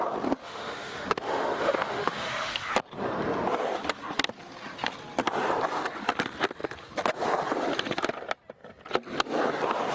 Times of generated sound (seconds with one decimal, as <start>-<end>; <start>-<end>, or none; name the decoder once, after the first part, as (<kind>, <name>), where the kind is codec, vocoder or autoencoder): 0.4-2.7 (autoencoder, DAC-VAE)